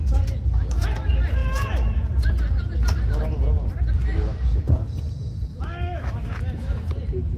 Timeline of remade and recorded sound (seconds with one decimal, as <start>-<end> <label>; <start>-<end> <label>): 0.0-5.5 recorded; 5.5-6.9 remade; 6.9-7.4 recorded